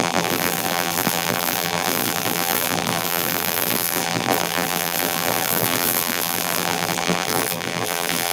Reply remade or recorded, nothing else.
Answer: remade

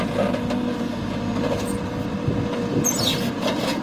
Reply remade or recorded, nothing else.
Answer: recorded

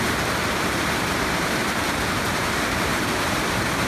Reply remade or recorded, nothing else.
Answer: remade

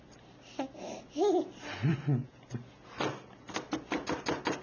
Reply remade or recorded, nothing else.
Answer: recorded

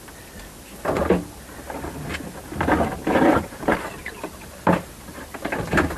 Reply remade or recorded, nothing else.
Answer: recorded